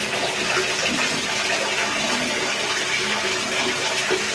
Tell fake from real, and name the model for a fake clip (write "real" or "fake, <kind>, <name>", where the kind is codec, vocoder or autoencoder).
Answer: real